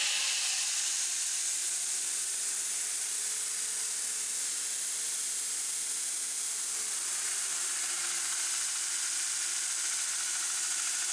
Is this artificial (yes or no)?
no